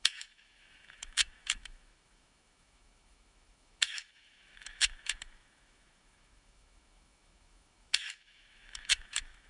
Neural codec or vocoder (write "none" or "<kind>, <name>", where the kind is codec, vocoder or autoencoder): autoencoder, DAC-VAE